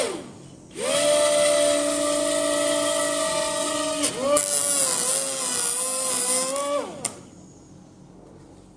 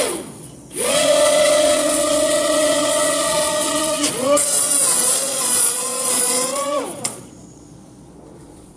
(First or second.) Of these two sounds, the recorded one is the first